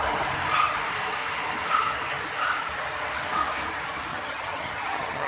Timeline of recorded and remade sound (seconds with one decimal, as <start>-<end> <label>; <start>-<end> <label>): 0.0-4.1 recorded; 4.1-5.3 remade

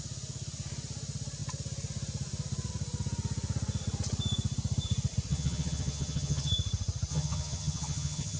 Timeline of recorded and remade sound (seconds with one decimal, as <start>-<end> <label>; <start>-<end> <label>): 0.0-5.3 recorded; 5.3-6.5 remade; 6.5-7.1 recorded; 7.1-8.4 remade